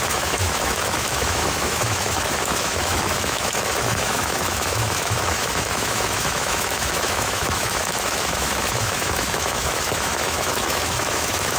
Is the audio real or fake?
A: fake